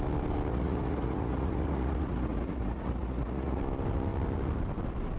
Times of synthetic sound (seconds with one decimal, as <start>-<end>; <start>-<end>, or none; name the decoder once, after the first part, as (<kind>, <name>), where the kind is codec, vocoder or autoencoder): 0.5-3.6 (vocoder, Vocos)